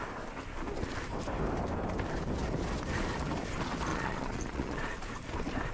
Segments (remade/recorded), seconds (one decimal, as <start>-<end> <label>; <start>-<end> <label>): 0.0-3.9 recorded; 3.9-4.8 remade; 4.8-5.7 recorded